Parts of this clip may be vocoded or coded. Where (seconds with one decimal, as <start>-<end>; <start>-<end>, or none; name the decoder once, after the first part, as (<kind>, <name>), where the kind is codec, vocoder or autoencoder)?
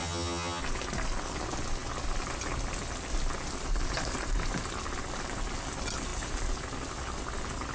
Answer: 0.0-0.6 (vocoder, HiFi-GAN)